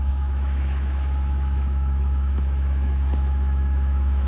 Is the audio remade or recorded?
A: remade